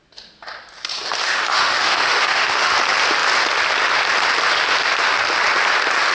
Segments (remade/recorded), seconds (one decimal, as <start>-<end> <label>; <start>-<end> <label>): 0.0-1.2 recorded; 1.2-2.7 remade; 2.7-6.1 recorded

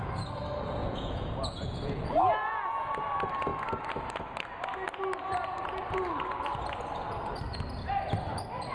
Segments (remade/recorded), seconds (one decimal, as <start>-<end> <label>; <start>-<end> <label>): 0.0-0.8 recorded; 0.8-2.9 remade; 2.9-8.7 recorded

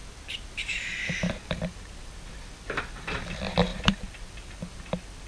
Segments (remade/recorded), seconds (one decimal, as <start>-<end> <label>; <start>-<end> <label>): 0.0-3.7 recorded; 3.7-4.2 remade; 4.2-5.3 recorded

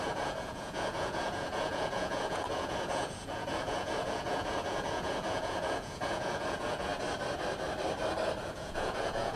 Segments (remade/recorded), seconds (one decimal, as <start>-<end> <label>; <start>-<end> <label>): 0.0-6.9 remade; 6.9-8.4 recorded; 8.4-9.4 remade

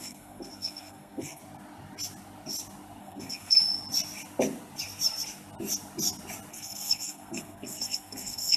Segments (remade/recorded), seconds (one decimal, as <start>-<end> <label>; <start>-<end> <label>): 0.0-1.4 remade; 1.4-3.0 recorded; 3.0-3.6 remade; 3.6-6.5 recorded; 6.5-8.6 remade

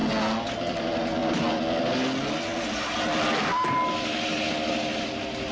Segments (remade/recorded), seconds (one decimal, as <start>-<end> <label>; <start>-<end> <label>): 0.0-5.5 recorded